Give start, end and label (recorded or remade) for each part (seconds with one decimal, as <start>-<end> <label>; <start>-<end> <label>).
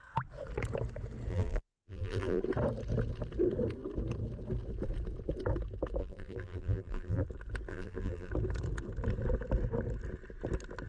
0.0-1.3 recorded; 1.3-2.4 remade; 2.4-6.0 recorded; 6.0-7.2 remade; 7.2-7.7 recorded; 7.7-8.3 remade; 8.3-10.9 recorded